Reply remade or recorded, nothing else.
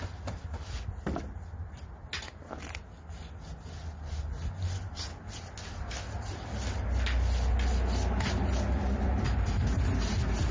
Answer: recorded